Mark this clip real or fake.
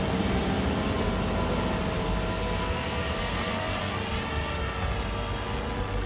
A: real